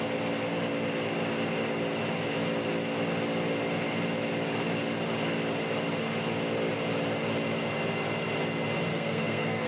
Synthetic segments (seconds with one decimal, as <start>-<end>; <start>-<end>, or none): 8.9-9.7